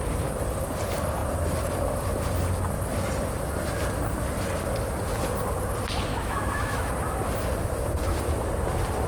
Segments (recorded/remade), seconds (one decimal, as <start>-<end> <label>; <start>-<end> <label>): 0.0-6.1 recorded; 6.1-6.9 remade; 6.9-9.1 recorded